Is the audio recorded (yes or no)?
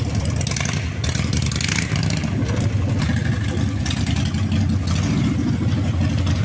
yes